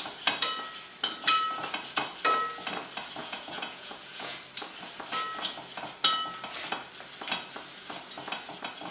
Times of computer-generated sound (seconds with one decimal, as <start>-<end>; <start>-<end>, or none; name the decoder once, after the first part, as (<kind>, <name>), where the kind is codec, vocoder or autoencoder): 3.2-4.4 (vocoder, Vocos)